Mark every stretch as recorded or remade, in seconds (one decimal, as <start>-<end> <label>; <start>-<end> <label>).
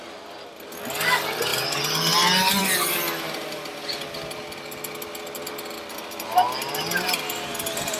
0.0-8.0 recorded